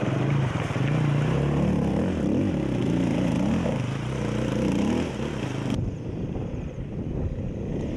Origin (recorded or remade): recorded